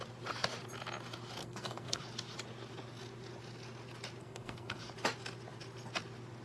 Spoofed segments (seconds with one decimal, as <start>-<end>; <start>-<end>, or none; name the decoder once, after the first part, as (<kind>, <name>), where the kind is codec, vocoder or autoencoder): 1.4-2.0 (codec, SNAC); 4.2-4.8